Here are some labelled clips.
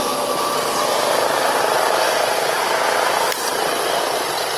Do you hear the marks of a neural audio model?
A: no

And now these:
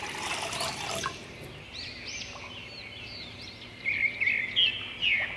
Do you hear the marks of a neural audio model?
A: no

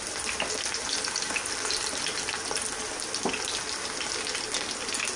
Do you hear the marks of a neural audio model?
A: no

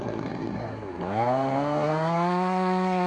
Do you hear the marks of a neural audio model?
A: yes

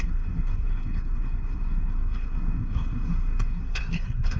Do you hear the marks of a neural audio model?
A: yes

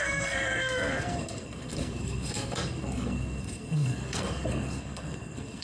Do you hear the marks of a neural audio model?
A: yes